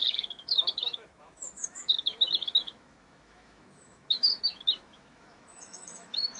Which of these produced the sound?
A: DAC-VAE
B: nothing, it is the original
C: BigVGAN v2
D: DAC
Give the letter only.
A